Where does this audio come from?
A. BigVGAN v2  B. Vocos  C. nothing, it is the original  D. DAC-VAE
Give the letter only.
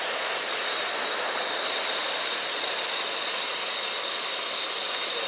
A